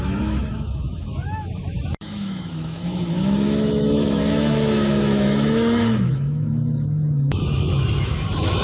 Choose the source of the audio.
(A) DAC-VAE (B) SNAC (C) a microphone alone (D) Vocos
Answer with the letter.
A